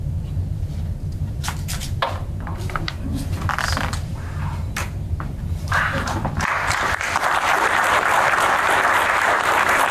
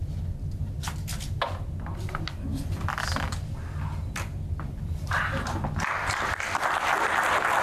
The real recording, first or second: second